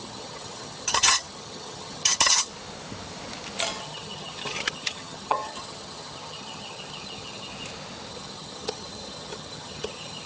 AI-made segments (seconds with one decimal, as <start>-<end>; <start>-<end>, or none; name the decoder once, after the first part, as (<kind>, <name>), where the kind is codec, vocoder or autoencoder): 0.0-2.5 (vocoder, HiFi-GAN); 3.8-7.5; 8.1-10.3